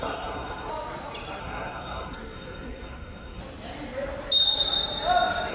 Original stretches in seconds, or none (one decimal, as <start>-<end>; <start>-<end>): 0.7-1.4; 3.4-5.5